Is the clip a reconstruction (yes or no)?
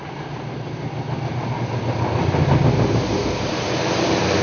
no